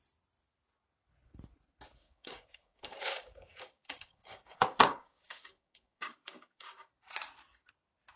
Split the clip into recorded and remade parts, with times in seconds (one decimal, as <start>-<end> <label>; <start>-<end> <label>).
0.0-2.0 recorded; 2.0-6.9 remade; 6.9-8.2 recorded